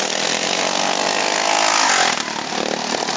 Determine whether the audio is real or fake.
real